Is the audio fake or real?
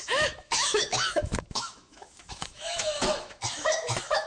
fake